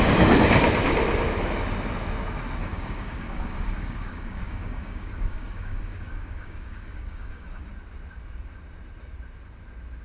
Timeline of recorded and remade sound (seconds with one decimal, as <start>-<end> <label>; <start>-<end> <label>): 0.0-2.6 recorded; 2.6-7.7 remade; 7.7-10.0 recorded